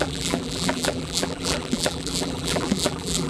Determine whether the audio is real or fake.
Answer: fake